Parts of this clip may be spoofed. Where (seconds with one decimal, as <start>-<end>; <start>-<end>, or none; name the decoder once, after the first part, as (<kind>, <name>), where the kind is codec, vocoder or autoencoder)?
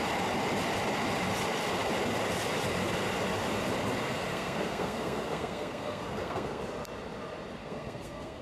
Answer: 4.3-6.6 (codec, SNAC); 7.6-8.4